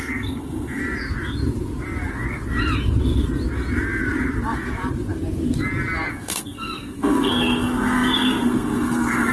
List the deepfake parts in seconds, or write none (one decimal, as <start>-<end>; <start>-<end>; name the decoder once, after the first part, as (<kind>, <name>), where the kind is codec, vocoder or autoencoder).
0.0-0.8 (codec, SNAC); 6.1-9.3